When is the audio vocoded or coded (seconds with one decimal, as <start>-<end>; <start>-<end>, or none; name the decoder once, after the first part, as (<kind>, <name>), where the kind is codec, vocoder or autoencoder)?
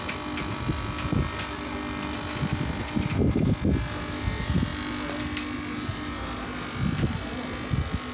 none